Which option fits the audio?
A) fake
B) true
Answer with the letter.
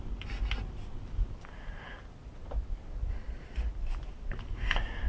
B